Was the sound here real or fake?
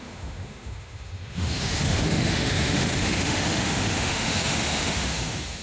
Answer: fake